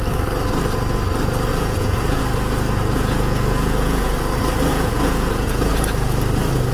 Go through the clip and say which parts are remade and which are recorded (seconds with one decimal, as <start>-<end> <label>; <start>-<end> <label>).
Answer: 0.0-1.5 recorded; 1.5-2.2 remade; 2.2-3.0 recorded; 3.0-4.1 remade; 4.1-4.7 recorded; 4.7-5.7 remade; 5.7-6.7 recorded